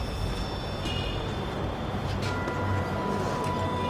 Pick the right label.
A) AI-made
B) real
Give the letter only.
B